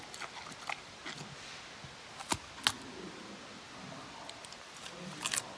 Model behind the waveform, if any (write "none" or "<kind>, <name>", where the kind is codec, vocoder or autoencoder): none